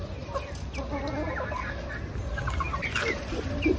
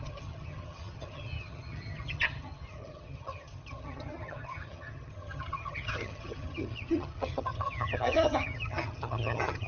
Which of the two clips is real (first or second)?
first